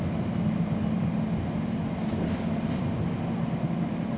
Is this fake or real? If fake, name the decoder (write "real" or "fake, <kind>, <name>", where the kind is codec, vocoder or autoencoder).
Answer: real